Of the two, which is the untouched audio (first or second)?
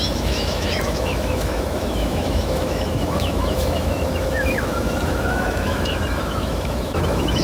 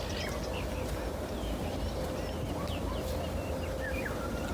second